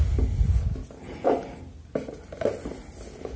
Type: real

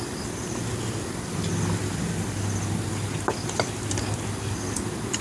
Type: real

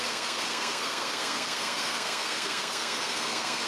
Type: fake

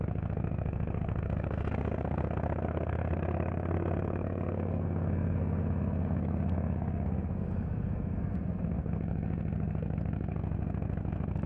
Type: fake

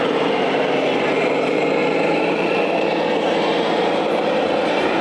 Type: fake